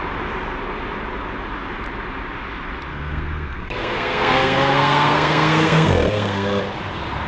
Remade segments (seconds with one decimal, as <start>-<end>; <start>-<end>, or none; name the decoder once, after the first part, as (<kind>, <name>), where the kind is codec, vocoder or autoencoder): 2.9-6.6 (codec, SNAC)